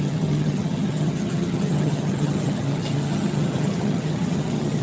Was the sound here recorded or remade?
remade